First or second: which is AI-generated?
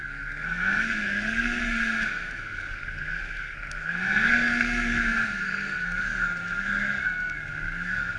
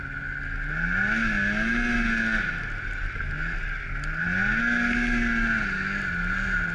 first